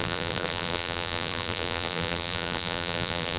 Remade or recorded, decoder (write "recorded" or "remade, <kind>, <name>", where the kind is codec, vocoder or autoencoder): remade, vocoder, BigVGAN v2